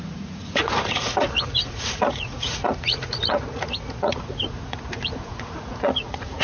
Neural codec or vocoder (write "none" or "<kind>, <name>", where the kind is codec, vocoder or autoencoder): vocoder, Vocos